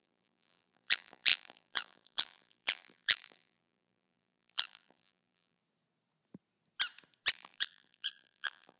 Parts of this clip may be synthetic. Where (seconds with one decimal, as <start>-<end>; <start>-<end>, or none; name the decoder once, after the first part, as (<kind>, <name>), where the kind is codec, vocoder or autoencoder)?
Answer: 0.0-5.6 (vocoder, BigVGAN v2); 7.3-8.8